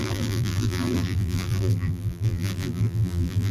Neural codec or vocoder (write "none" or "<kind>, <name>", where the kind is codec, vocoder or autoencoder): vocoder, BigVGAN v2